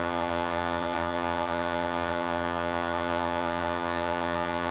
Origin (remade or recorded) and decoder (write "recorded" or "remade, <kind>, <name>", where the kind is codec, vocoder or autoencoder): remade, vocoder, HiFi-GAN